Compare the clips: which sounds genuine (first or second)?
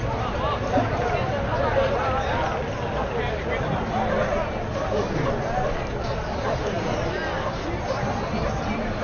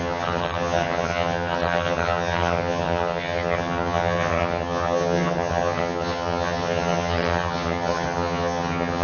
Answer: first